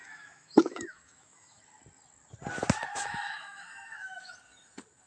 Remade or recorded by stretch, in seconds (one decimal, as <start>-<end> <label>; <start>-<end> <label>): 0.0-1.6 remade; 1.6-2.9 recorded; 2.9-4.3 remade; 4.3-5.1 recorded